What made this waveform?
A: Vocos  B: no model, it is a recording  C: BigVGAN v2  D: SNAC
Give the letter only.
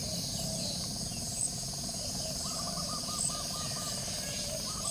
C